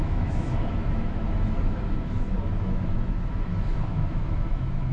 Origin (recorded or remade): remade